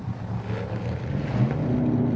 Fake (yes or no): no